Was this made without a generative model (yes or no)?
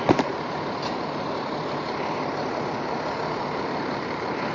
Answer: no